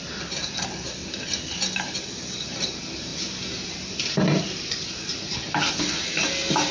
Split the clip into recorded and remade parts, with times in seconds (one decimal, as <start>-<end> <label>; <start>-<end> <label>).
0.0-6.7 recorded